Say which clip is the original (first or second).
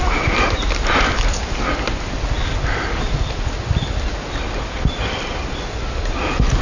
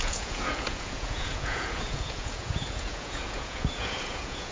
first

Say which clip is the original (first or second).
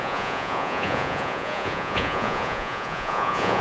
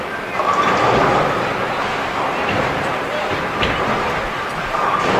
second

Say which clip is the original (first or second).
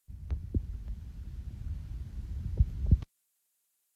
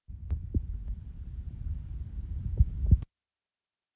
first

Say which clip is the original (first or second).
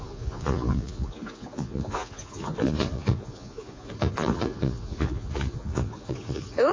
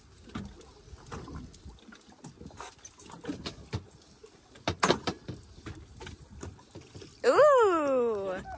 second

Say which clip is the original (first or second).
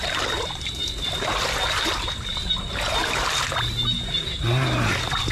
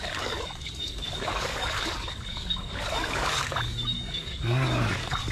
first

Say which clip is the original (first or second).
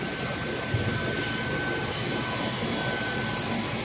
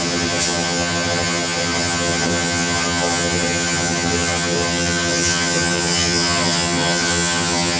first